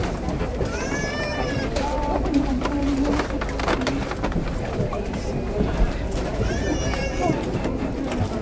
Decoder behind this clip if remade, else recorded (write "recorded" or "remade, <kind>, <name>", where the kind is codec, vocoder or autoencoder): remade, vocoder, BigVGAN v2